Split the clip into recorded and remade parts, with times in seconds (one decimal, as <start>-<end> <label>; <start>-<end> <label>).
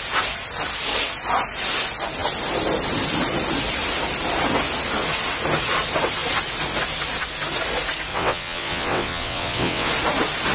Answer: 0.0-8.1 recorded; 8.1-9.9 remade; 9.9-10.5 recorded